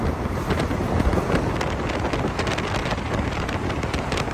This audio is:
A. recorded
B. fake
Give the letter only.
A